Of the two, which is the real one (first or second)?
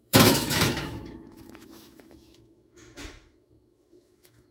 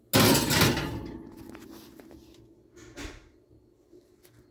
second